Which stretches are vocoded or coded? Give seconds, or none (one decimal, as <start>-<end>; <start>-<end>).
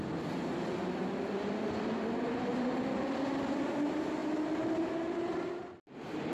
none